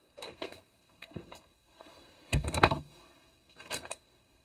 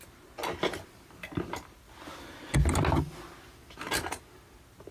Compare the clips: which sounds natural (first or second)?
second